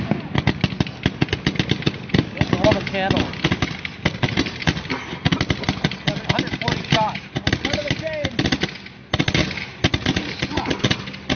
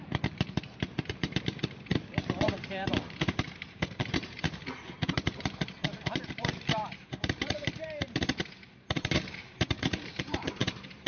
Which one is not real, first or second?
second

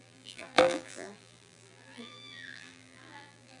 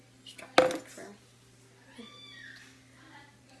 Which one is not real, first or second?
first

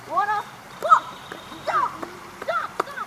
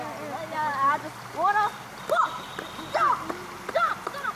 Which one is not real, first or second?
first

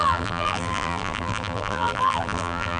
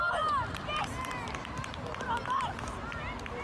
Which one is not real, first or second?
first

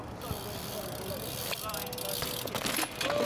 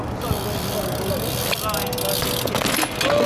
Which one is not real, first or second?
first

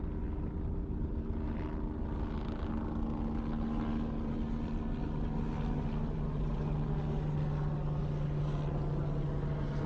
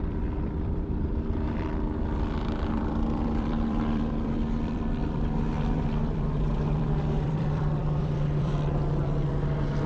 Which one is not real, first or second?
second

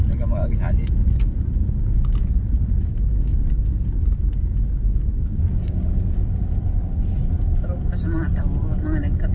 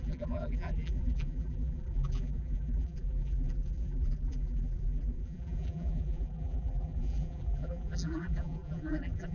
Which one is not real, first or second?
second